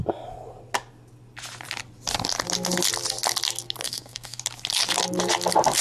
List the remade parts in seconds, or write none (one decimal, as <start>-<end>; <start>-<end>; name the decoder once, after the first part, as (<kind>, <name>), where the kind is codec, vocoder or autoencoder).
3.8-4.4 (codec, SNAC)